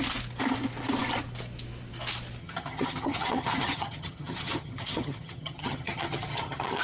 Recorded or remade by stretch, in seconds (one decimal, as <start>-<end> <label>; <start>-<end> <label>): 0.0-2.4 recorded; 2.4-6.8 remade